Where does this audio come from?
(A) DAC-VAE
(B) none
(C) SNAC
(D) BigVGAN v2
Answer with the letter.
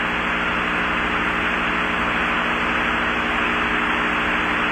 B